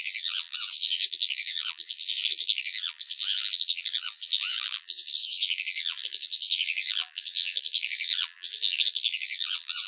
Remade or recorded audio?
remade